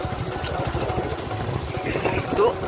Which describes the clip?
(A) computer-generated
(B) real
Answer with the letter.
B